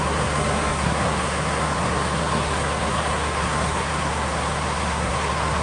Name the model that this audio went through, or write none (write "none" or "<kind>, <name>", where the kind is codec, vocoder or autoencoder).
codec, SNAC